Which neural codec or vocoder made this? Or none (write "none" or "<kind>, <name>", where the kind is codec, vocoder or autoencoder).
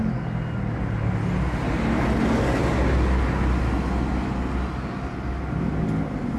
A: none